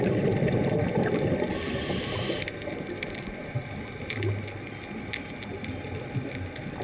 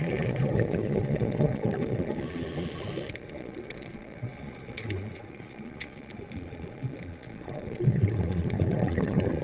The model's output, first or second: second